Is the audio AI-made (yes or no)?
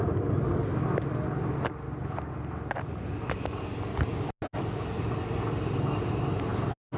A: no